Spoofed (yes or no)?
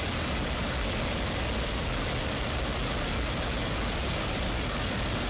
no